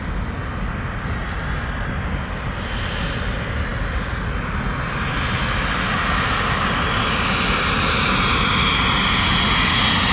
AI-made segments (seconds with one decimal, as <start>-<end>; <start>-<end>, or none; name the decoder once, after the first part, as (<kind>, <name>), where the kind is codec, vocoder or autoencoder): none